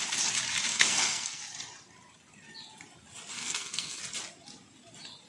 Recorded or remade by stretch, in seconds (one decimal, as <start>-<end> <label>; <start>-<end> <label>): 0.0-0.7 recorded; 0.7-1.4 remade; 1.4-3.3 recorded; 3.3-4.0 remade; 4.0-5.3 recorded

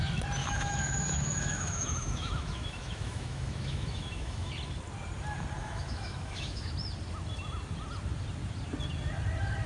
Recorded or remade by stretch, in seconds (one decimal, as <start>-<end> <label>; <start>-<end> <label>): 0.0-0.4 recorded; 0.4-4.5 remade; 4.5-5.6 recorded; 5.6-6.7 remade; 6.7-9.7 recorded

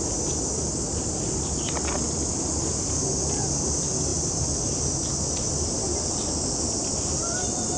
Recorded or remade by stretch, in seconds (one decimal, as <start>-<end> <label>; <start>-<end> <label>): 0.0-7.8 recorded

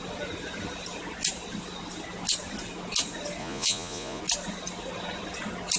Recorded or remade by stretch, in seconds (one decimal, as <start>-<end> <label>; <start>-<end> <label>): 0.0-3.4 recorded; 3.4-4.2 remade; 4.2-5.8 recorded

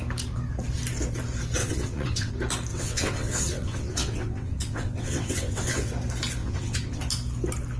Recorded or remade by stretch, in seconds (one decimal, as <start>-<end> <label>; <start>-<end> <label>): 0.0-1.6 recorded; 1.6-2.3 remade; 2.3-2.7 recorded; 2.7-5.9 remade; 5.9-6.4 recorded; 6.4-7.0 remade; 7.0-7.8 recorded

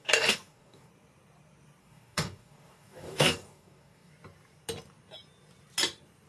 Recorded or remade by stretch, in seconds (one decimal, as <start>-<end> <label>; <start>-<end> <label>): 0.0-0.9 remade; 0.9-1.8 recorded; 1.8-4.1 remade; 4.1-6.3 recorded